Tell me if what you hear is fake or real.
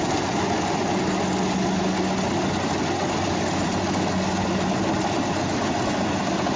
real